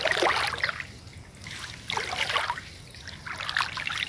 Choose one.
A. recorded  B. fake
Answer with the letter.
A